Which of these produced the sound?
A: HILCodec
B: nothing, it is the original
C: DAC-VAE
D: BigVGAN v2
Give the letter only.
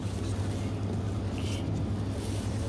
B